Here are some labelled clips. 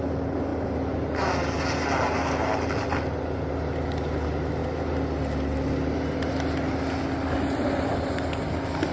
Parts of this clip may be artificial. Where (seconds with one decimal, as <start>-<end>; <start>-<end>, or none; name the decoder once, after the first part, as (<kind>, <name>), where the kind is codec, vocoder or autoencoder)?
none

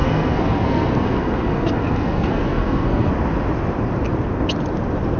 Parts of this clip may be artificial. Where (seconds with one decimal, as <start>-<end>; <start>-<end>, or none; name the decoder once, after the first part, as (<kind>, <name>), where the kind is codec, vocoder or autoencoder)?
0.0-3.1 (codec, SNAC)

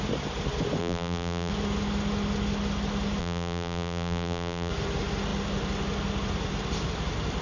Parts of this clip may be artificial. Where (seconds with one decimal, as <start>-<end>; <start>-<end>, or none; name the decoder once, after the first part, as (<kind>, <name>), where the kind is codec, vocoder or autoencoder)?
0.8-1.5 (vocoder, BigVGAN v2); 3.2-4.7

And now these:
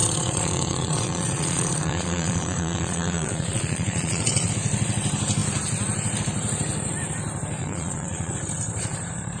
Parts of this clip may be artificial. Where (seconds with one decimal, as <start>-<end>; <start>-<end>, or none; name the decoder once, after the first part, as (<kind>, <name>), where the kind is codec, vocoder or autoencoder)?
0.0-4.5 (vocoder, Vocos); 7.6-8.3

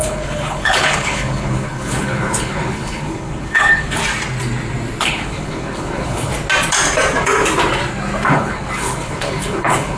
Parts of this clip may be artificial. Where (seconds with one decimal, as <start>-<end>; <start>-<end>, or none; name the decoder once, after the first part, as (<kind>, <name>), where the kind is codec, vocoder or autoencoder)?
0.0-4.0 (codec, HILCodec); 5.0-6.3; 8.3-10.0

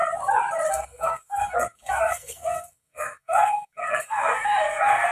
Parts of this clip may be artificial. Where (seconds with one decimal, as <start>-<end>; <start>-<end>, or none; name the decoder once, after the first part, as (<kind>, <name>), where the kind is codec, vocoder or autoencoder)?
0.7-5.1 (codec, SNAC)